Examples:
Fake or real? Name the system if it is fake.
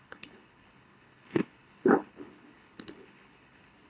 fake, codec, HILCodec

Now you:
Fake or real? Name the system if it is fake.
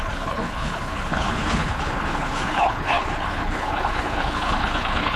fake, codec, HILCodec